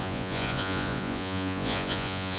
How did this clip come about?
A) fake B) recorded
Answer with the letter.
A